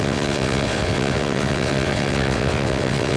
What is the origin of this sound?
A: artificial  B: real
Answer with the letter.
A